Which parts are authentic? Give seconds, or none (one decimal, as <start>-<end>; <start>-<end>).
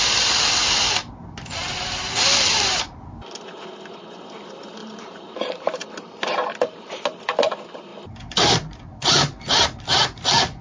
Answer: 0.0-4.8; 6.9-10.6